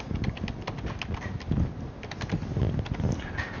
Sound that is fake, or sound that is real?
real